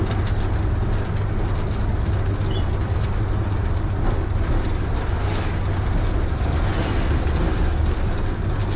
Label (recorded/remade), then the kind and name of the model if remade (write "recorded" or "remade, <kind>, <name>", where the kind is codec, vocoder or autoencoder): recorded